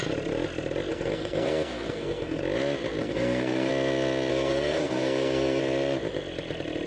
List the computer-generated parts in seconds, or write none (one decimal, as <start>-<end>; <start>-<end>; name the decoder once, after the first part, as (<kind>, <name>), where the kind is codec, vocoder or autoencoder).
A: 0.9-2.4 (codec, SNAC); 3.0-3.7; 4.3-5.6